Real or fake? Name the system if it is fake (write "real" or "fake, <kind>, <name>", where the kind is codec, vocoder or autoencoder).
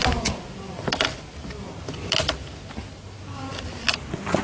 real